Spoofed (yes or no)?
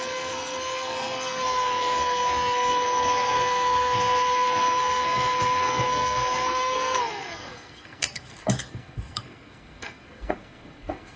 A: yes